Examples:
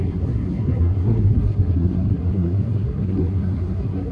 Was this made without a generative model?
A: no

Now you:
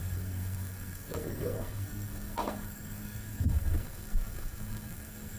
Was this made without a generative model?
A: no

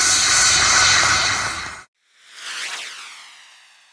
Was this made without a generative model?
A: yes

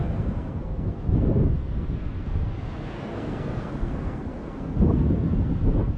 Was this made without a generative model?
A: no